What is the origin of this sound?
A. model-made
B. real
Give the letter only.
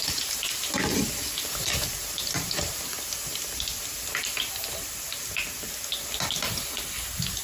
B